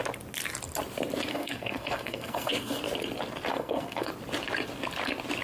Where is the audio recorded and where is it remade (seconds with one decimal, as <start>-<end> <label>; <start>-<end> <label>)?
0.0-1.3 recorded; 1.3-2.8 remade; 2.8-3.5 recorded; 3.5-4.1 remade; 4.1-5.4 recorded